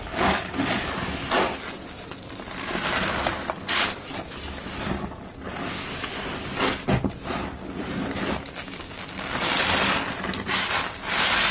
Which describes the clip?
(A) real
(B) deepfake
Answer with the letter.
A